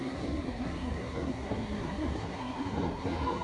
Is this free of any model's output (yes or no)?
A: no